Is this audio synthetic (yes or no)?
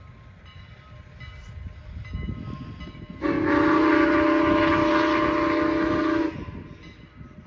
no